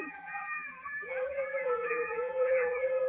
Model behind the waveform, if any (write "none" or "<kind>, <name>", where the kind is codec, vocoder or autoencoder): vocoder, BigVGAN v2